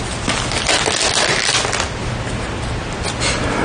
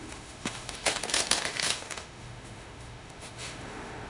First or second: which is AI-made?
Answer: second